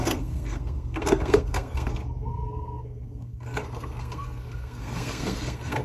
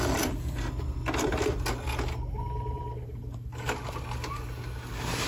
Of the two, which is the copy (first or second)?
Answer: first